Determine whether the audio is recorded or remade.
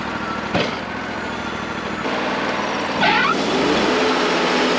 recorded